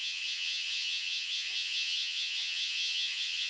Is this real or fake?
fake